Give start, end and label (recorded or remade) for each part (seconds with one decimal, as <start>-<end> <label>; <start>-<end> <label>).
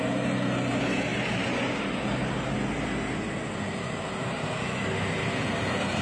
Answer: 0.0-6.0 recorded